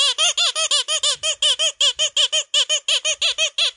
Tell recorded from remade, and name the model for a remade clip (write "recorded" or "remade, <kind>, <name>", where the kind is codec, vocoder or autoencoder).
recorded